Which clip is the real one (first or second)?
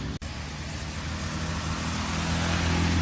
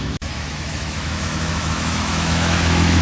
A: first